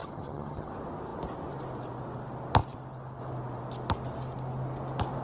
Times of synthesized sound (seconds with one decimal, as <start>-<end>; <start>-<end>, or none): 0.0-0.7